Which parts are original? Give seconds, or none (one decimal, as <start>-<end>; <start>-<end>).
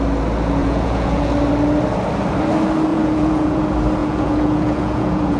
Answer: 0.0-0.6; 1.3-2.9; 3.6-4.0